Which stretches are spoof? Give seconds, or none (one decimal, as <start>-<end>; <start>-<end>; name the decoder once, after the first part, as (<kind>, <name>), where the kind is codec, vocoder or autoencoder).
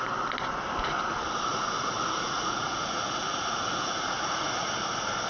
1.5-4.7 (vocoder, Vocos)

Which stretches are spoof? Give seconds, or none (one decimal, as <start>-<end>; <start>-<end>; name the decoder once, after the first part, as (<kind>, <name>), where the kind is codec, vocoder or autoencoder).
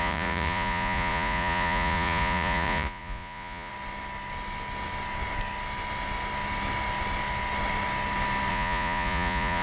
0.0-3.7 (vocoder, Vocos); 8.5-9.6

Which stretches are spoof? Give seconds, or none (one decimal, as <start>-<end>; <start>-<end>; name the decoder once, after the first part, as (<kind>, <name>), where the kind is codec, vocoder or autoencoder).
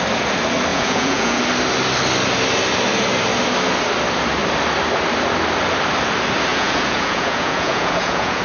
0.7-1.4 (vocoder, Vocos); 6.5-8.4